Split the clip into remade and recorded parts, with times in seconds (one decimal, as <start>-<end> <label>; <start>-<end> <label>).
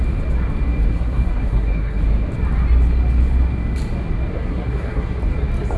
0.0-0.9 recorded; 0.9-2.0 remade; 2.0-4.3 recorded; 4.3-5.2 remade; 5.2-5.8 recorded